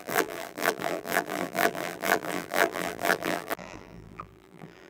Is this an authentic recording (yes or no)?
no